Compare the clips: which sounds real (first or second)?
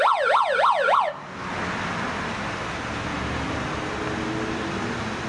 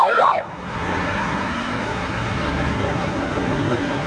first